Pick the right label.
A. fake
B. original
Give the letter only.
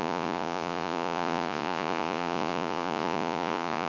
A